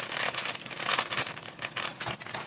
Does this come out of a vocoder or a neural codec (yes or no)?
no